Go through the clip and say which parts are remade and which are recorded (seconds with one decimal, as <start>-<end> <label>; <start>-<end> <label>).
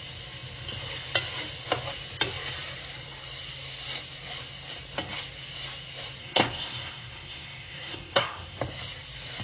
0.0-6.2 recorded; 6.2-8.6 remade; 8.6-9.4 recorded